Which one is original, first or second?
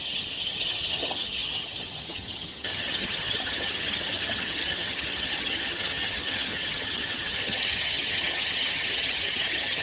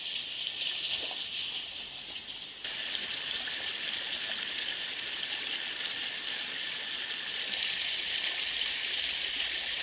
second